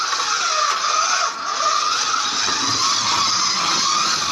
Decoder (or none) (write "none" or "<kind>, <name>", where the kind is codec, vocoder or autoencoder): none